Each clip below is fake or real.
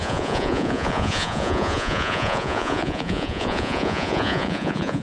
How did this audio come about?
fake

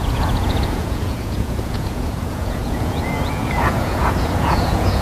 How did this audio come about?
fake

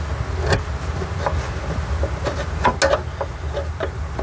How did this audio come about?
real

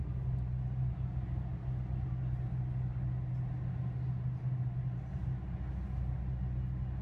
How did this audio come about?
real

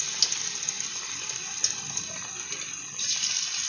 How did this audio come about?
real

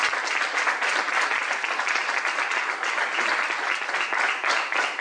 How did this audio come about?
real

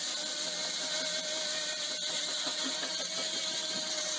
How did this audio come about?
real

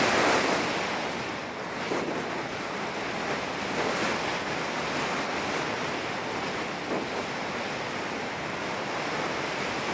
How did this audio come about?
real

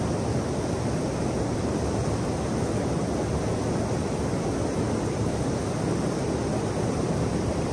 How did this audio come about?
real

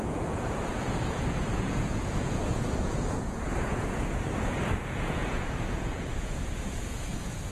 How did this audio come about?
fake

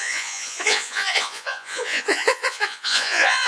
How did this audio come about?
fake